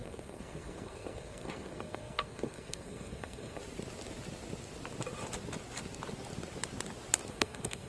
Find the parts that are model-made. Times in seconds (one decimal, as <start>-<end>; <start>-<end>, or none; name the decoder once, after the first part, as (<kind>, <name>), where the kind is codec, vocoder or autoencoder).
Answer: 0.0-3.6 (codec, SNAC); 7.3-7.9